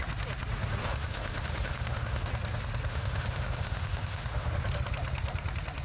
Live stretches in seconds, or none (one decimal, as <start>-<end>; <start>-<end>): 0.0-0.8; 2.3-2.9; 4.5-5.8